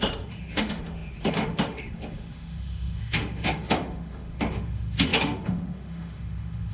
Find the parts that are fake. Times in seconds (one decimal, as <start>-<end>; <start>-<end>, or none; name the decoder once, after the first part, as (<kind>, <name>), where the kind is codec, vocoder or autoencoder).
0.0-6.7 (autoencoder, DAC-VAE)